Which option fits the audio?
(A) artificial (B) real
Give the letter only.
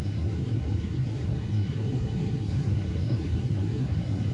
A